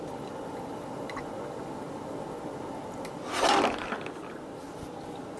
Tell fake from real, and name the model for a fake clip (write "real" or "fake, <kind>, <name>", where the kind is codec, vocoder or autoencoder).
real